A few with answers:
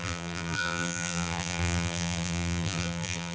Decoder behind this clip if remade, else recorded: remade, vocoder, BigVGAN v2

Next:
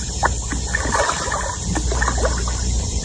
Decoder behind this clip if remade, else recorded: recorded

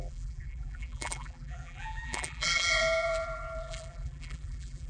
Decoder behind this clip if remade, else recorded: remade, vocoder, BigVGAN v2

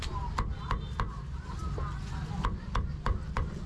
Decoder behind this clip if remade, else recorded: recorded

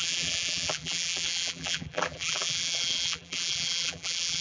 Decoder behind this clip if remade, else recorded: remade, vocoder, BigVGAN v2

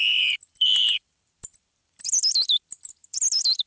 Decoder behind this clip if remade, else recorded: remade, vocoder, BigVGAN v2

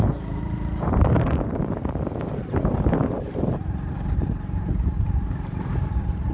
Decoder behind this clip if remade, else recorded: remade, vocoder, BigVGAN v2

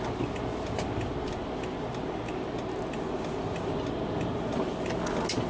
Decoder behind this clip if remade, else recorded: recorded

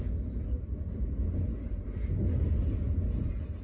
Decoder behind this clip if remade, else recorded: recorded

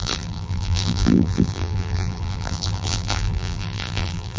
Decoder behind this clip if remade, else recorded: remade, vocoder, BigVGAN v2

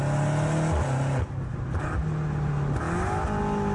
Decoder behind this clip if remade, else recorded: recorded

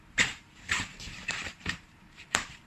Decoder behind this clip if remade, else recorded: remade, vocoder, BigVGAN v2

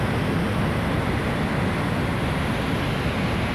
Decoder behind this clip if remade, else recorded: recorded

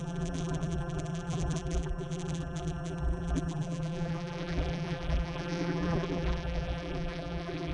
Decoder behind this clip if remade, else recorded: remade, vocoder, BigVGAN v2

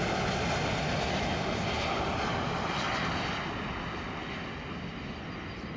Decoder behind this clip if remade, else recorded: recorded